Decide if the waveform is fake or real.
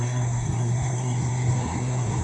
fake